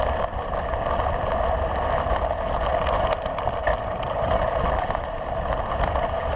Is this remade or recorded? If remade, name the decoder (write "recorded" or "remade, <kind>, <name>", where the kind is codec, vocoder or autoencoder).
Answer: recorded